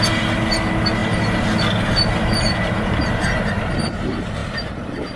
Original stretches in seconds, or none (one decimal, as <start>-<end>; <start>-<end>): 0.0-5.2